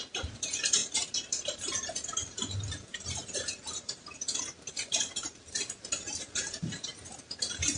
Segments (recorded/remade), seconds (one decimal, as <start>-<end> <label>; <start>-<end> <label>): 0.0-7.8 remade